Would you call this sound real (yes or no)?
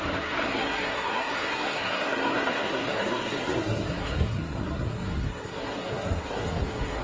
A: no